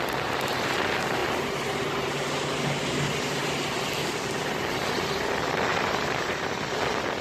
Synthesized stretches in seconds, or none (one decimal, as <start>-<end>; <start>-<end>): 5.7-6.5